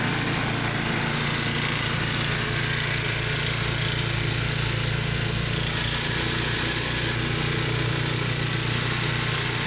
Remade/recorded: recorded